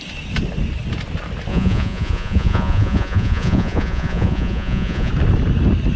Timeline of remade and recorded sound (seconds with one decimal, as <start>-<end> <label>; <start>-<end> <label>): 0.0-1.5 recorded; 1.5-5.1 remade; 5.1-6.0 recorded